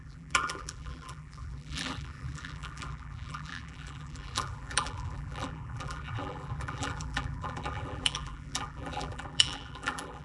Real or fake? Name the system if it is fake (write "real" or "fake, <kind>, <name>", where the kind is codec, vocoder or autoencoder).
fake, vocoder, BigVGAN v2